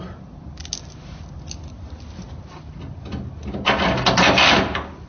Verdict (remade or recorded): recorded